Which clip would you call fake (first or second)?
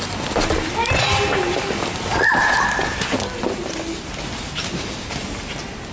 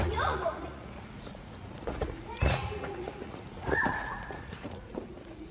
second